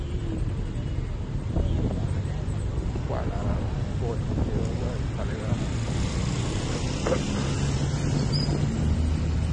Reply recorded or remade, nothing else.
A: recorded